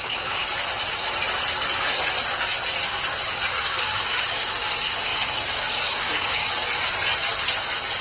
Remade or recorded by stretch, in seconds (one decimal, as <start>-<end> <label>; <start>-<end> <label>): 0.0-0.4 remade; 0.4-2.9 recorded; 2.9-6.4 remade; 6.4-8.0 recorded